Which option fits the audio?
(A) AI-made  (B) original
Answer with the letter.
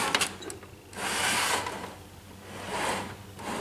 B